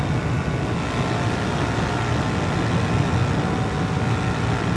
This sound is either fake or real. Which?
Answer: real